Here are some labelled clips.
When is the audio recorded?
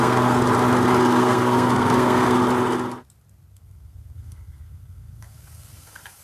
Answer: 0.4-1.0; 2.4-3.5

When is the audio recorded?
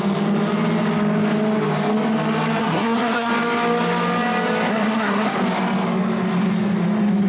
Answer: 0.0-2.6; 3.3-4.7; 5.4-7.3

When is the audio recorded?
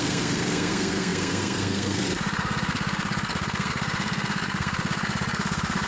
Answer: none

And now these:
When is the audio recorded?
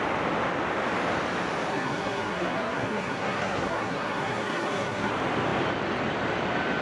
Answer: 0.0-1.7; 5.1-6.8